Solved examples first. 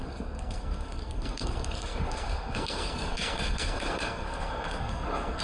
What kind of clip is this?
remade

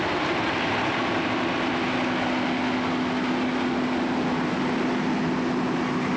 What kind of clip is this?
recorded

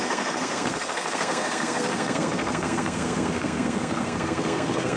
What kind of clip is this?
remade